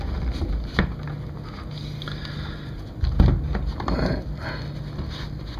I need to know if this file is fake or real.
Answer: real